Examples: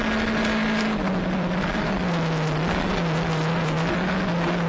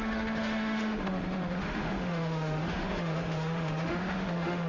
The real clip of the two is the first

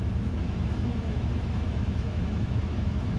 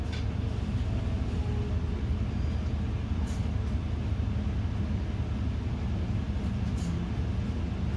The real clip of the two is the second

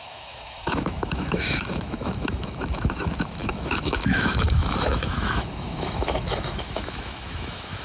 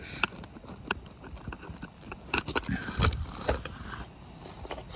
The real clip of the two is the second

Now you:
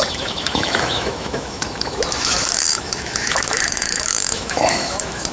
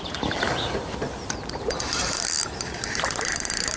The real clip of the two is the second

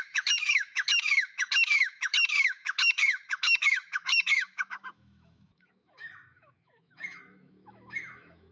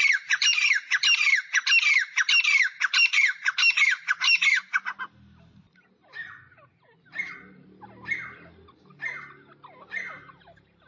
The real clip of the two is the second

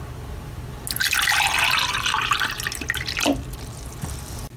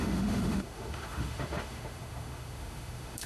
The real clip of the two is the first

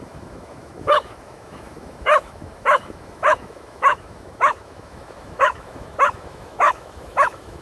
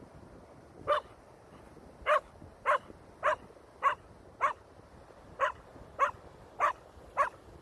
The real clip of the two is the second